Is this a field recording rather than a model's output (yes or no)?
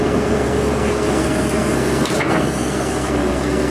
no